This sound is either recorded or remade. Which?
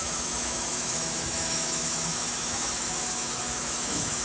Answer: remade